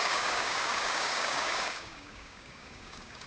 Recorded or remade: remade